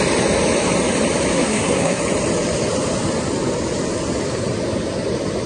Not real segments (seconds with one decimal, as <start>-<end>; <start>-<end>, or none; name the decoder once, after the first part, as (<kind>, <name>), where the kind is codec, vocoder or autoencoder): 1.3-2.0 (codec, SNAC)